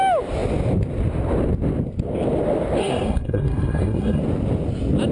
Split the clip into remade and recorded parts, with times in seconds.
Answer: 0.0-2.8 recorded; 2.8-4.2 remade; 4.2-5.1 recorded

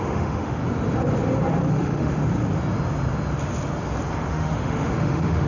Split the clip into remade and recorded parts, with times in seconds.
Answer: 0.0-0.6 remade; 0.6-1.7 recorded; 1.7-2.2 remade; 2.2-4.3 recorded; 4.3-5.5 remade

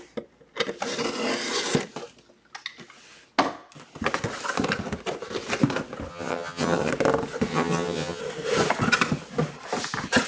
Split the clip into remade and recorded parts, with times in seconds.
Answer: 0.0-6.1 recorded; 6.1-6.9 remade; 6.9-7.5 recorded; 7.5-8.2 remade; 8.2-10.3 recorded